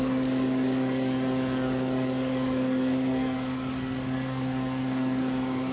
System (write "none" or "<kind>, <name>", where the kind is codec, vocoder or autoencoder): codec, DAC